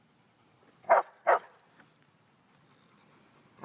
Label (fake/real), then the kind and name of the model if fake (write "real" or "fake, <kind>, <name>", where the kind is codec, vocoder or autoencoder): real